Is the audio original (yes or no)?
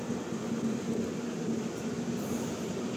yes